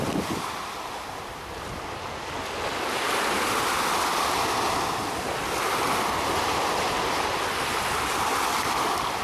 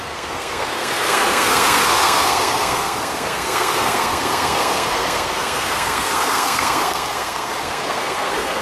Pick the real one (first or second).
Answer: first